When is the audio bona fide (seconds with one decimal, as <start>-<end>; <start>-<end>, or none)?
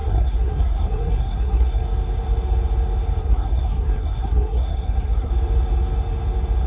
1.8-3.2; 5.3-6.7